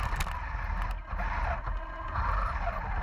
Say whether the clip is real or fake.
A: real